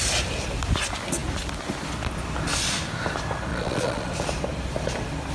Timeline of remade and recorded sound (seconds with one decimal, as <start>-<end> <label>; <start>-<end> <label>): 0.0-3.5 recorded; 3.5-4.1 remade; 4.1-5.3 recorded